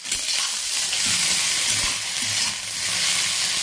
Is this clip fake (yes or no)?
no